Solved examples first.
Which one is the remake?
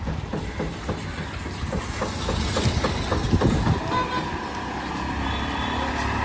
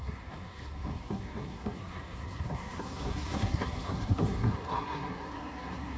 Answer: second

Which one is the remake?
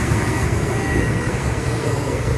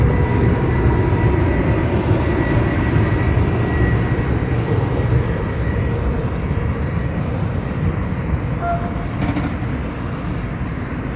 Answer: first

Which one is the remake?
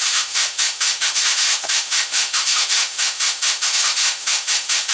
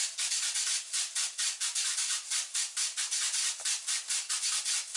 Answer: first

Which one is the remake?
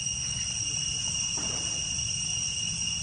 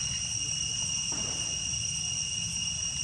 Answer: first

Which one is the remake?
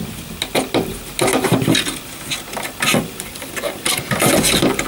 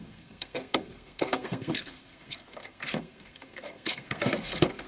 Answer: second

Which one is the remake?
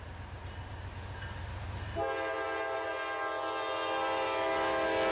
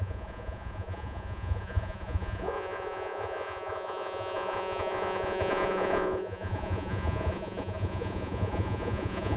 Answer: second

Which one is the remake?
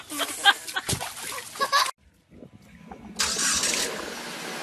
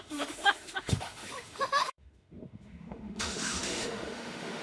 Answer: second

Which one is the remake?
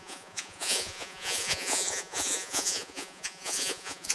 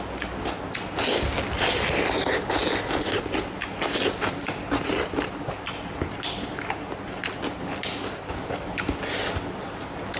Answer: first